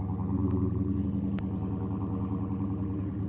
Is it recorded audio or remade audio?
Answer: recorded